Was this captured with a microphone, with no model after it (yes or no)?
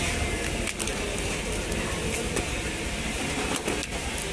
yes